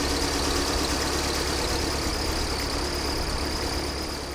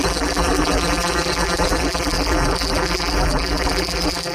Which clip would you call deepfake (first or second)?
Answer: second